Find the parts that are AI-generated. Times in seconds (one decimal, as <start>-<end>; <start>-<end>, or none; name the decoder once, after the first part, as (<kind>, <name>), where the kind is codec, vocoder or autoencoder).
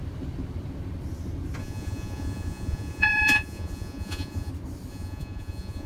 1.6-4.5 (vocoder, Vocos); 4.9-5.9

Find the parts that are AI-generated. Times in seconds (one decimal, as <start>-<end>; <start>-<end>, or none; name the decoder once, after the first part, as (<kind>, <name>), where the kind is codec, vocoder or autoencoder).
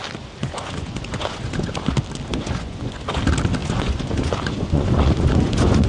0.4-1.7 (vocoder, Vocos); 2.3-3.2; 3.6-5.9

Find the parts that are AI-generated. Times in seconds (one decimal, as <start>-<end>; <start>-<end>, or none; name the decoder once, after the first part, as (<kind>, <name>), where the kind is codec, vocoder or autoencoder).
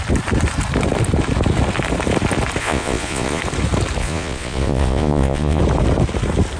2.6-3.4 (vocoder, Vocos); 4.0-5.6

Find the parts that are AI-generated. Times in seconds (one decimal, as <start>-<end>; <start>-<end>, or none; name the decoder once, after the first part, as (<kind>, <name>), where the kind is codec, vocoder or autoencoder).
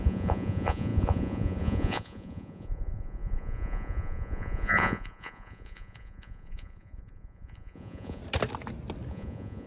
0.0-8.2 (vocoder, Vocos); 9.1-9.7